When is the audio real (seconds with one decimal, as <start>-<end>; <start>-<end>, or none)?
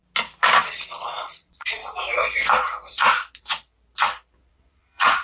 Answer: 0.0-0.7; 1.8-4.4